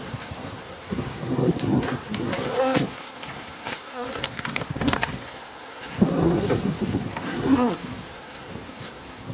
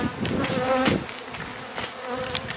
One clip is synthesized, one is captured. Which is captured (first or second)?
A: second